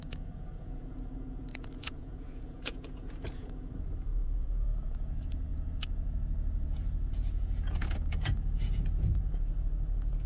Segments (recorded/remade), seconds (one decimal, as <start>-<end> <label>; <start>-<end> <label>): 0.0-10.3 remade